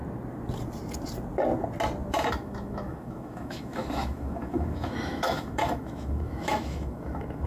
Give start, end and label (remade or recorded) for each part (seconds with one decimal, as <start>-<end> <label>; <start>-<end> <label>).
0.0-2.1 recorded; 2.1-7.5 remade